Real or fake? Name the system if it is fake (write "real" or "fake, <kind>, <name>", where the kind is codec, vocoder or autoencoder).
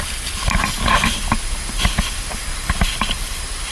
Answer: real